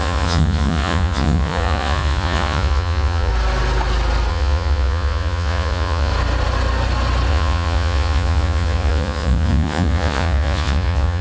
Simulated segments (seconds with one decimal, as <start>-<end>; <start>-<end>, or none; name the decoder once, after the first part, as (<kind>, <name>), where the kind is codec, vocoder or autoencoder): 0.0-3.3 (vocoder, Vocos); 4.3-6.1; 7.3-11.2